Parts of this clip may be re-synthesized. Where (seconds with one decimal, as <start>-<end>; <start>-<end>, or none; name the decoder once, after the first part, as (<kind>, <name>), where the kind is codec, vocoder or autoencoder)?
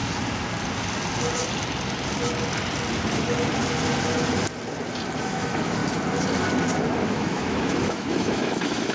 5.2-5.8 (autoencoder, DAC-VAE); 7.1-8.9